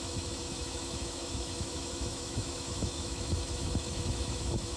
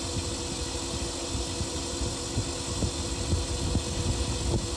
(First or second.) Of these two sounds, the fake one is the first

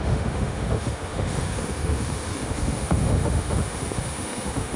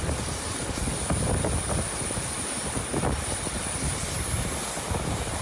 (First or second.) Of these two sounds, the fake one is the first